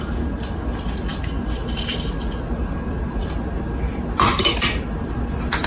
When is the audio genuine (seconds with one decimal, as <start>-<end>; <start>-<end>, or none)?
0.0-5.7